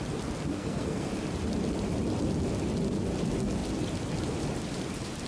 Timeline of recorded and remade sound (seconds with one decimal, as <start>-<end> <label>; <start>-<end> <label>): 0.0-0.5 recorded; 0.5-1.1 remade; 1.1-5.3 recorded